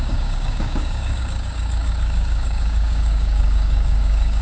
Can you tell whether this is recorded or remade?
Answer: remade